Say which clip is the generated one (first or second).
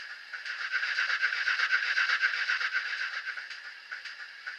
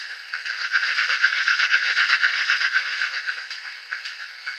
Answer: second